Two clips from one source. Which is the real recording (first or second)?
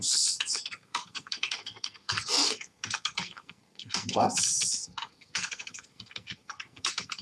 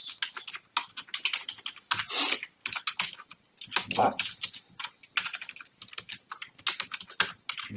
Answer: second